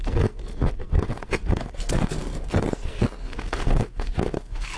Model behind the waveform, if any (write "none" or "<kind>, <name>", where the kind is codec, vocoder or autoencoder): codec, SNAC